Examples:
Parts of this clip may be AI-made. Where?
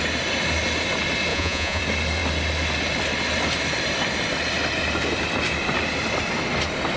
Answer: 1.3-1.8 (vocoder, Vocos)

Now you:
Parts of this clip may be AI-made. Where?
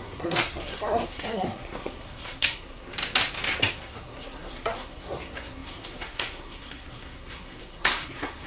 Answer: 0.0-2.9 (codec, SNAC); 3.7-8.5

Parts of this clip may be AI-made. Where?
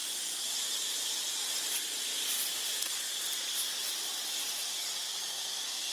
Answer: 5.2-5.9 (codec, SNAC)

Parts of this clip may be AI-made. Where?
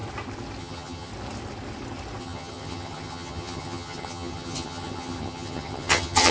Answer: 0.6-1.1 (vocoder, HiFi-GAN); 2.2-6.3